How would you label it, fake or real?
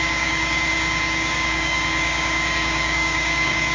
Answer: fake